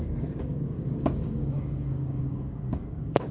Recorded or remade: remade